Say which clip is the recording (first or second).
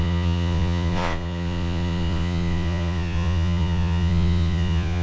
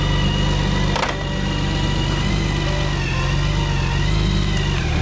second